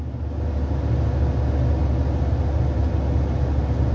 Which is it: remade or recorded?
recorded